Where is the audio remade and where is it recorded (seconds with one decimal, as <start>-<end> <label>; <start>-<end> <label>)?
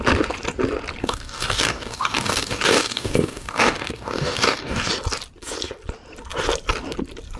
0.0-1.0 recorded; 1.0-4.9 remade; 4.9-7.4 recorded